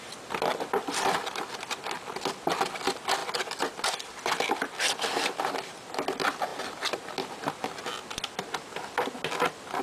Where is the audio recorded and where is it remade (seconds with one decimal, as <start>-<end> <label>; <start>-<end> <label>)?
0.0-3.2 recorded; 3.2-5.3 remade; 5.3-9.8 recorded